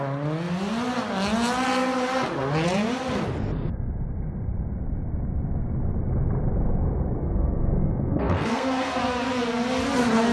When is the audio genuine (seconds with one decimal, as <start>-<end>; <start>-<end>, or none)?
0.0-7.2; 9.0-10.3